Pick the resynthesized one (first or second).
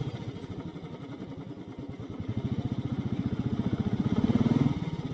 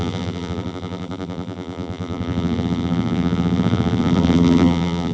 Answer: second